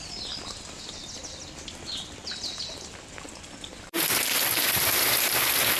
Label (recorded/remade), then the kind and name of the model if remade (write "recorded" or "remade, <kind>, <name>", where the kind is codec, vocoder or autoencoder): remade, vocoder, BigVGAN v2